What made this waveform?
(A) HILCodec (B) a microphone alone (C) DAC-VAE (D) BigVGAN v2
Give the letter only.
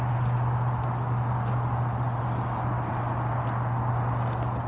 B